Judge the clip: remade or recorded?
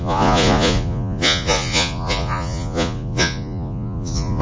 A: remade